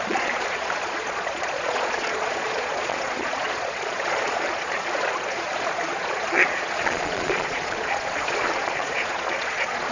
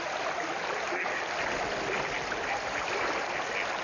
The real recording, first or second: second